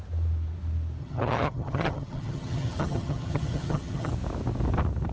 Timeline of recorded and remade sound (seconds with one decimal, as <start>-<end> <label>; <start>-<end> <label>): 0.0-1.0 recorded; 1.0-4.1 remade; 4.1-5.1 recorded